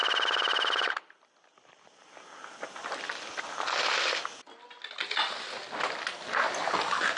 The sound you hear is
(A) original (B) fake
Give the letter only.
A